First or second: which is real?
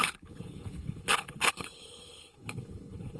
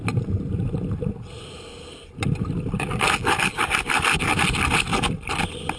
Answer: second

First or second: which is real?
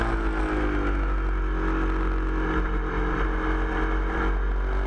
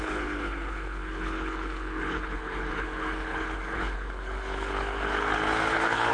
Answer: first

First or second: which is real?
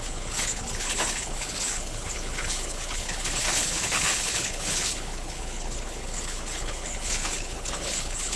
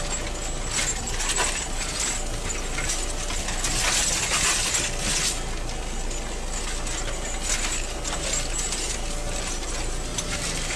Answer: second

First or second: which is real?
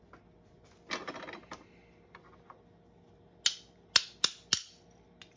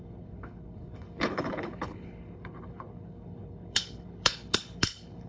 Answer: first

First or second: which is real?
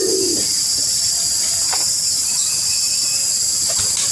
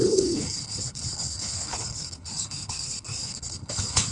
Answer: first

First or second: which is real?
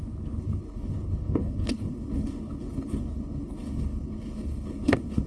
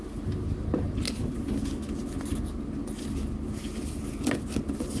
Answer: second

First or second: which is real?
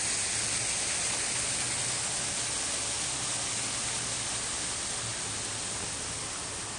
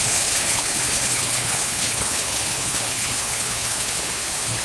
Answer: first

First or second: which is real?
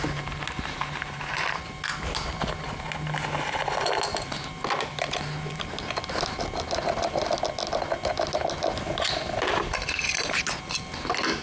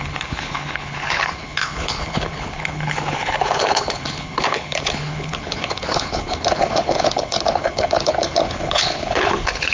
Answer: first